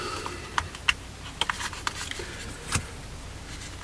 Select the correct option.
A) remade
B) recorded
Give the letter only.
B